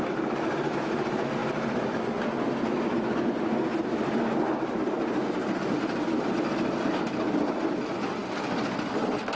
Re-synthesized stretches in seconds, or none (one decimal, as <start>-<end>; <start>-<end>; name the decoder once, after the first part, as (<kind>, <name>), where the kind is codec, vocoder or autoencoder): 8.2-9.3 (vocoder, BigVGAN v2)